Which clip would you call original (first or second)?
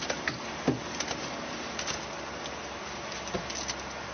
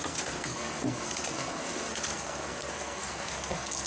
first